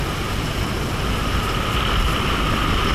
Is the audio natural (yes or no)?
yes